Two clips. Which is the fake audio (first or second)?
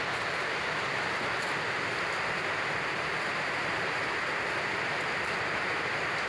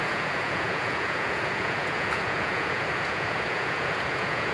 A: second